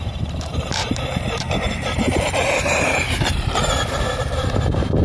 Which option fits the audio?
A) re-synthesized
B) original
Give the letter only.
A